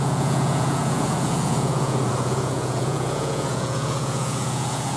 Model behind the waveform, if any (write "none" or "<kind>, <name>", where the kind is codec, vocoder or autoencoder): vocoder, Vocos